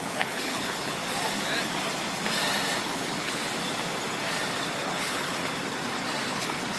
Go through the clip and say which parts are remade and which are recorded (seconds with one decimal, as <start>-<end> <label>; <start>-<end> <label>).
0.0-1.0 remade; 1.0-2.8 recorded; 2.8-3.4 remade; 3.4-4.8 recorded; 4.8-5.4 remade; 5.4-6.3 recorded; 6.3-6.8 remade